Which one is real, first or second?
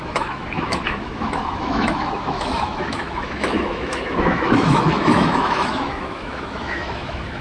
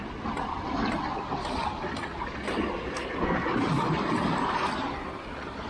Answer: second